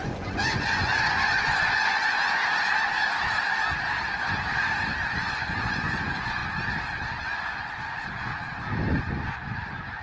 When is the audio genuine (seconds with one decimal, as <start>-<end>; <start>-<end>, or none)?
2.4-5.1; 6.4-7.2; 8.3-9.0